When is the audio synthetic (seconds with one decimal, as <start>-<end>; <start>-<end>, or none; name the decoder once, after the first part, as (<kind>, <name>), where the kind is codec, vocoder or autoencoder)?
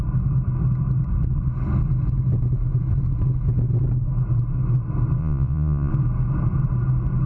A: 5.2-5.9 (vocoder, Vocos)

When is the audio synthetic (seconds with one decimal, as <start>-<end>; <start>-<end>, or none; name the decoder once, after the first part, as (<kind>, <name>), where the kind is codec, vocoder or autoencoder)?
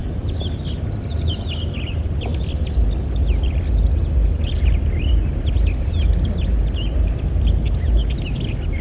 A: none